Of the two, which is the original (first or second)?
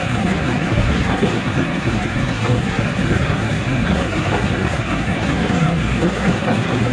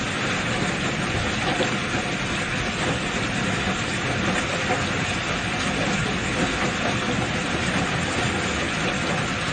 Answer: second